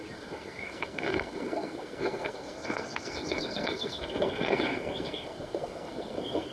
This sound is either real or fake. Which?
fake